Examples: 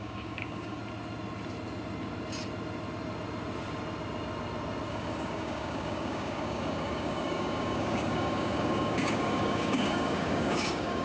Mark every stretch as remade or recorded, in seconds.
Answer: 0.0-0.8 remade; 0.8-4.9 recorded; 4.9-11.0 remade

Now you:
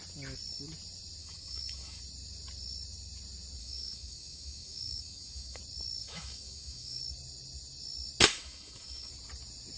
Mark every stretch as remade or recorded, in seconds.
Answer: 0.0-1.2 recorded; 1.2-2.0 remade; 2.0-3.6 recorded; 3.6-5.6 remade; 5.6-6.0 recorded; 6.0-7.0 remade; 7.0-8.3 recorded; 8.3-9.1 remade; 9.1-9.8 recorded

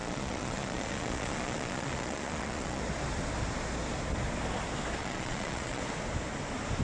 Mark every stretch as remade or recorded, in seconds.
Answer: 0.0-2.8 remade; 2.8-5.0 recorded; 5.0-5.8 remade; 5.8-6.8 recorded